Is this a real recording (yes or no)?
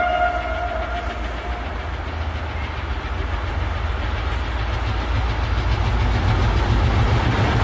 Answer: yes